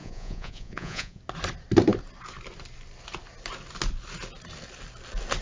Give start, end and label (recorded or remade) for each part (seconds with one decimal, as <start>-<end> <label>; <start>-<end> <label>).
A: 0.0-1.2 remade; 1.2-5.4 recorded